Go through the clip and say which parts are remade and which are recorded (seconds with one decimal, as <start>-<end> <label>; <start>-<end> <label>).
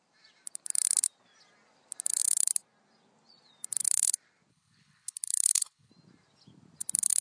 0.0-4.5 recorded; 4.5-5.9 remade; 5.9-7.2 recorded